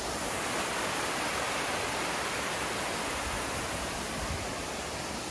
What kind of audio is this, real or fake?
real